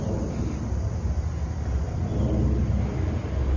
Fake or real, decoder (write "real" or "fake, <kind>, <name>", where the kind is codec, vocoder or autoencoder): real